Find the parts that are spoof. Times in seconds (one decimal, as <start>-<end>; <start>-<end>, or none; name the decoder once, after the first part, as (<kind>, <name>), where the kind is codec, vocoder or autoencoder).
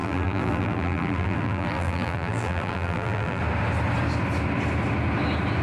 0.0-3.4 (vocoder, BigVGAN v2)